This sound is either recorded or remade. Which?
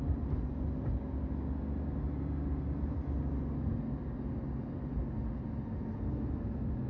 recorded